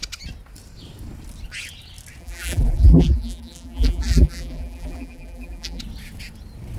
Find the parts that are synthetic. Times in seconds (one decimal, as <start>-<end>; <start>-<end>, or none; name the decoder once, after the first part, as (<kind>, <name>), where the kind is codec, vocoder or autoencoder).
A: 2.2-5.8 (vocoder, BigVGAN v2)